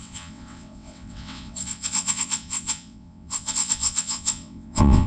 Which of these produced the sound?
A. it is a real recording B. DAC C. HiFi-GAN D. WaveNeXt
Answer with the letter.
D